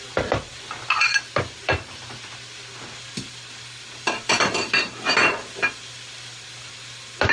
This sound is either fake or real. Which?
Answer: real